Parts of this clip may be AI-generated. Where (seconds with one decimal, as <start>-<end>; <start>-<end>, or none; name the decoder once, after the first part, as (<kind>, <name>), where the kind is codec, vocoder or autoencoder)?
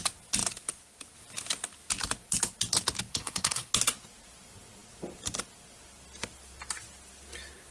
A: 3.1-3.7 (codec, SNAC)